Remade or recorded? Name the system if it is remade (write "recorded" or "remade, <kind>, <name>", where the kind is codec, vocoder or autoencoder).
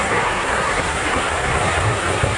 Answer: remade, codec, SNAC